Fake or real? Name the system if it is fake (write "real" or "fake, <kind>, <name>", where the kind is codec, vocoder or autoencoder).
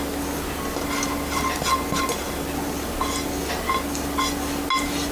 real